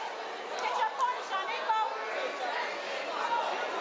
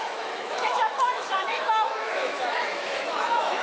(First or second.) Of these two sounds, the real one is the first